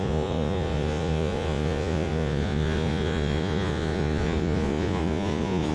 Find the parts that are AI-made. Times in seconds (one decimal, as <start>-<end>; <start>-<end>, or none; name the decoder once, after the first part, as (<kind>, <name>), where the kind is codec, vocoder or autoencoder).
0.0-5.7 (vocoder, Vocos)